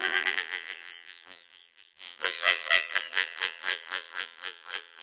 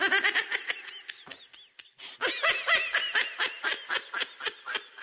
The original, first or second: second